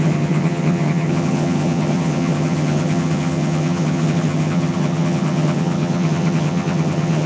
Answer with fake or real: fake